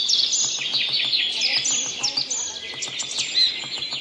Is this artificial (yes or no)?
no